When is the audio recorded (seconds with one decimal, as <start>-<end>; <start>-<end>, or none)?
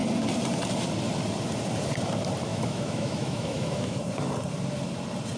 0.0-2.5; 4.0-5.4